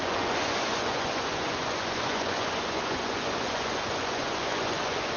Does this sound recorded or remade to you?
remade